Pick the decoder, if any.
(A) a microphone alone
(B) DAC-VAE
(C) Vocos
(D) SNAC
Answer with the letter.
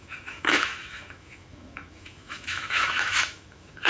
B